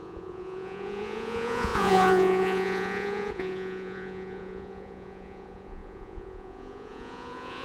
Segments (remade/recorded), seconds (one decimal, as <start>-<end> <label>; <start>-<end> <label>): 0.0-7.6 remade